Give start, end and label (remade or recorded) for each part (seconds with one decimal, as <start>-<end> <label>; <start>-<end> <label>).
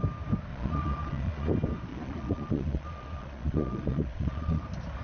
0.0-0.5 recorded; 0.5-1.5 remade; 1.5-1.9 recorded; 1.9-4.6 remade; 4.6-5.0 recorded